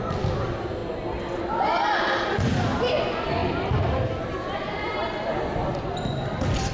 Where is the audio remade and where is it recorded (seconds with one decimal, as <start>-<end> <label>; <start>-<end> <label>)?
0.0-6.7 recorded